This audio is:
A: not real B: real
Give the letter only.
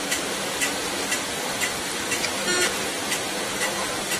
B